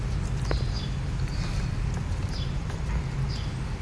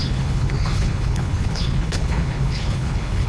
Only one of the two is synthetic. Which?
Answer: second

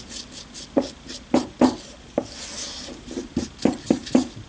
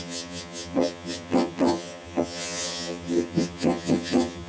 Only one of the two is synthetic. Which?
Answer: second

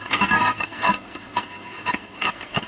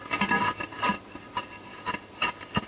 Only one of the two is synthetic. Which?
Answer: first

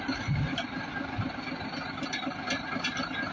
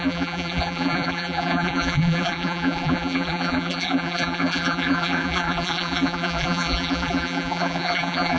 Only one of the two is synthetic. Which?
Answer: second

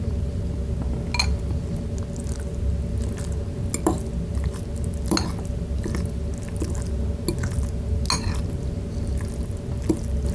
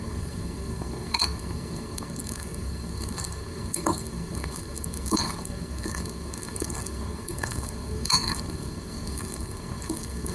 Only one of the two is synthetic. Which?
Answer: second